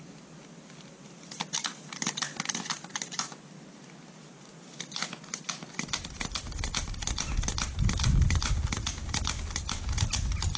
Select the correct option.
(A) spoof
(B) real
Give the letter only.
B